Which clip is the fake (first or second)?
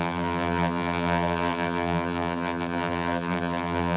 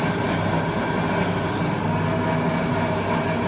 first